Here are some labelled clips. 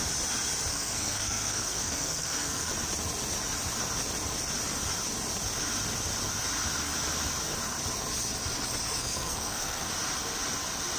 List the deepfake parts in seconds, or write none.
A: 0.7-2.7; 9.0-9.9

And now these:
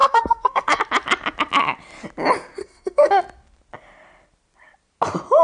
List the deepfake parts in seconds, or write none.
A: 0.0-0.8; 2.6-3.1